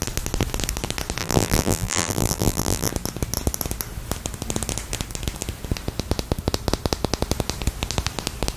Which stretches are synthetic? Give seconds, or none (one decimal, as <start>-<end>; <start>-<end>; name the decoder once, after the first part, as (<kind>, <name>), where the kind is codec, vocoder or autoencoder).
1.2-2.9 (vocoder, BigVGAN v2)

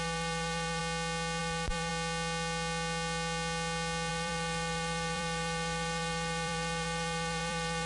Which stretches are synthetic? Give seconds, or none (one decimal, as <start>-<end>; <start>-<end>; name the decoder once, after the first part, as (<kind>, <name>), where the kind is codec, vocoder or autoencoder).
0.0-0.8 (vocoder, BigVGAN v2); 1.4-1.9; 4.1-7.9

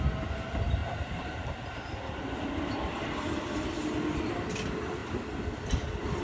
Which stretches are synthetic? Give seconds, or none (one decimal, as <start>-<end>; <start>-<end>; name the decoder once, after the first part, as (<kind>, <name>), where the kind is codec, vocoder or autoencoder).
0.8-4.2 (vocoder, BigVGAN v2)

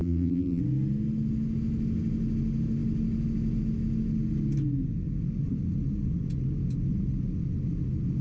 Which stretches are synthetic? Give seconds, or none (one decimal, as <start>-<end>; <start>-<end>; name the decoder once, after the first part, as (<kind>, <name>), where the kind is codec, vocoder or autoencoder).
0.0-0.6 (vocoder, BigVGAN v2)

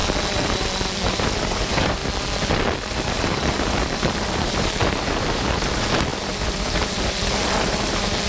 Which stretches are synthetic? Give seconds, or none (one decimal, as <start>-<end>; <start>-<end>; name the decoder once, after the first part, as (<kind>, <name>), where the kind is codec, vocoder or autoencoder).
1.1-2.0 (vocoder, BigVGAN v2); 3.1-8.3

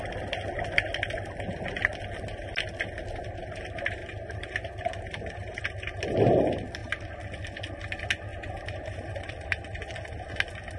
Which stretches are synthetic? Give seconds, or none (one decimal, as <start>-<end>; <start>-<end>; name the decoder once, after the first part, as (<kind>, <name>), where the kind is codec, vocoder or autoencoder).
4.0-5.6 (vocoder, BigVGAN v2); 8.3-10.2